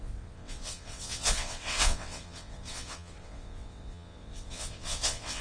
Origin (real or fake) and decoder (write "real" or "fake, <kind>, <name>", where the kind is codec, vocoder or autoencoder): fake, vocoder, WaveNeXt